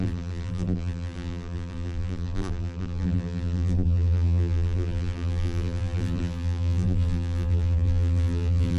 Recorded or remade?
remade